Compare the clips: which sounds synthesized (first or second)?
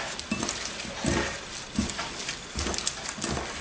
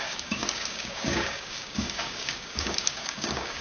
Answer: second